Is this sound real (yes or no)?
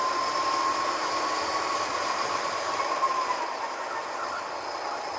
no